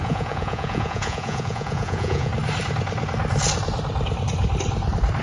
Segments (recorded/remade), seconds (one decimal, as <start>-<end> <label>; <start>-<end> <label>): 0.0-2.3 remade; 2.3-5.2 recorded